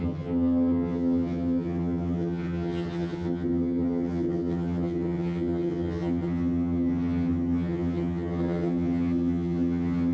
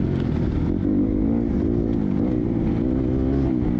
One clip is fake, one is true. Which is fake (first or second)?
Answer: first